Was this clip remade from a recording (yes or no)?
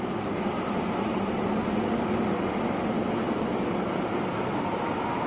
no